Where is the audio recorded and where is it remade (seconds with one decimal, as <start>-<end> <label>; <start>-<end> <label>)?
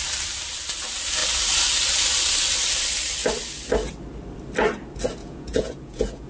0.0-5.2 recorded; 5.2-6.3 remade